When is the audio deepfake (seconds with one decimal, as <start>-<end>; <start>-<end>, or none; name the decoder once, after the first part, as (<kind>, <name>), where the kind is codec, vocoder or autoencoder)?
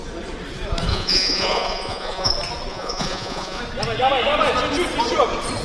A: 0.9-2.3 (vocoder, Vocos); 2.7-3.6